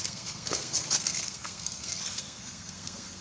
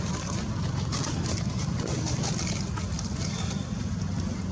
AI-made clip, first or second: first